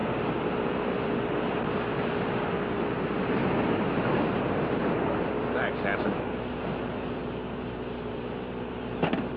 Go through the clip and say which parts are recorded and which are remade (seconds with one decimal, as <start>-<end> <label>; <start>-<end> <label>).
0.0-7.2 remade; 7.2-8.1 recorded; 8.1-9.4 remade